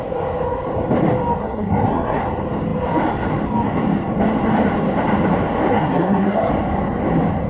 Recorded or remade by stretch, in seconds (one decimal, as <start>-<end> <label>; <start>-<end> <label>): 0.0-1.4 recorded; 1.4-2.2 remade; 2.2-5.7 recorded; 5.7-6.5 remade; 6.5-7.5 recorded